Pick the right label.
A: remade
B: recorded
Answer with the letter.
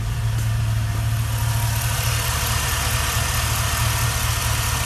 B